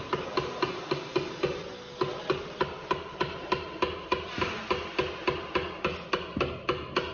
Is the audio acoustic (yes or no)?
yes